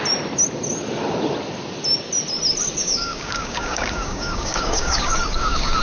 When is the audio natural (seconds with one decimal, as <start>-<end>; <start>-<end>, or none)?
0.0-2.8